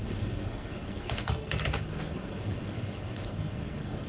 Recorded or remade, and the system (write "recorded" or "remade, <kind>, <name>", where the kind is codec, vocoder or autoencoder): remade, codec, SNAC